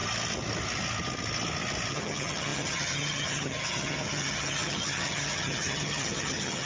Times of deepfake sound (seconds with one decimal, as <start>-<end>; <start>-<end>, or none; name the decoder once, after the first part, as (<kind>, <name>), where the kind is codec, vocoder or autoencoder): 1.9-6.7 (vocoder, HiFi-GAN)